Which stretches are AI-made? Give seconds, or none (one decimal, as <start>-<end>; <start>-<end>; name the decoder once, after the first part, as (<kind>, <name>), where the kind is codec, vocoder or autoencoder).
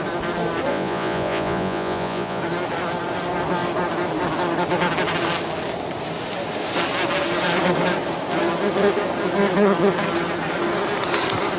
0.7-2.4 (vocoder, Vocos)